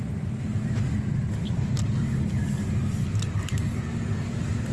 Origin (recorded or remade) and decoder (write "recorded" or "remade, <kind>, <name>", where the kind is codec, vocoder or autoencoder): recorded